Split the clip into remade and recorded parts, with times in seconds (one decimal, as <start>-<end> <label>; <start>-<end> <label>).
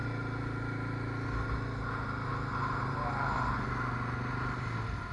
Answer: 0.0-5.1 recorded